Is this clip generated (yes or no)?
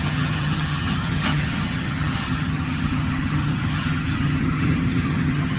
yes